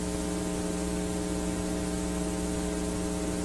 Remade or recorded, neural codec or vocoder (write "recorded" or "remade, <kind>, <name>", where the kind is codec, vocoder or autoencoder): recorded